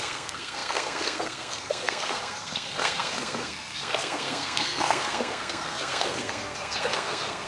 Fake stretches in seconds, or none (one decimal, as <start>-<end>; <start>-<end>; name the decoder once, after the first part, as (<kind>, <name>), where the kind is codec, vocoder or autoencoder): 0.0-7.5 (codec, SNAC)